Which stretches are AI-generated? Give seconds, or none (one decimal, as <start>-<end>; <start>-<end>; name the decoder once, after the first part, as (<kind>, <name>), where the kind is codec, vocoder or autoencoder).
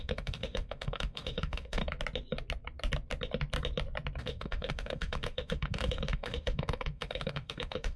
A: 0.0-1.8 (autoencoder, DAC-VAE); 4.2-8.0